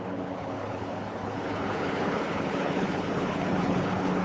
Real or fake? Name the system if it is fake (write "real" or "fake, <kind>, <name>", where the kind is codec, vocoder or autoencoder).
fake, codec, HILCodec